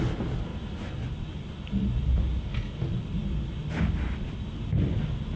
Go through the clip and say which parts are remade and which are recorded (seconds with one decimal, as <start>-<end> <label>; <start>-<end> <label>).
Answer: 0.0-5.4 recorded